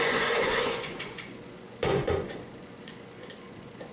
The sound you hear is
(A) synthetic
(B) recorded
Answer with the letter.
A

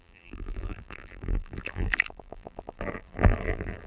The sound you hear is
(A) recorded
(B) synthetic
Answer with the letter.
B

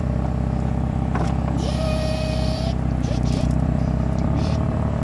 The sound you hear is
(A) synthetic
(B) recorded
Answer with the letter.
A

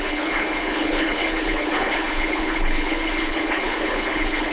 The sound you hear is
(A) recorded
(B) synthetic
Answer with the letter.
B